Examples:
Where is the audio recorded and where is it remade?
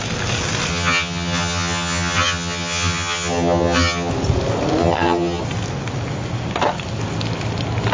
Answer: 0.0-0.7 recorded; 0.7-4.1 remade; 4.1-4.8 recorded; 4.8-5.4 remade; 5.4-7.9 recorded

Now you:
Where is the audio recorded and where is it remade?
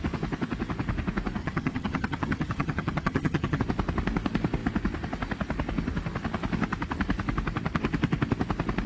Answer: 0.0-1.4 recorded; 1.4-3.6 remade; 3.6-8.9 recorded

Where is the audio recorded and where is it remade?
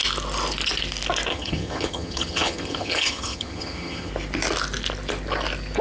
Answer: 0.0-1.3 recorded; 1.3-4.1 remade; 4.1-5.8 recorded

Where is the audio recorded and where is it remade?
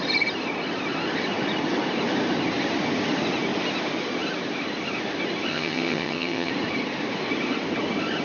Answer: 0.0-5.5 recorded; 5.5-6.5 remade; 6.5-8.2 recorded